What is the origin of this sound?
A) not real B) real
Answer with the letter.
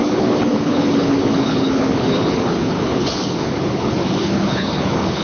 A